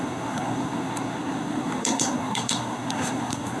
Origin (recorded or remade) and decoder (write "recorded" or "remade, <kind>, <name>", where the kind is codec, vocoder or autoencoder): remade, codec, SNAC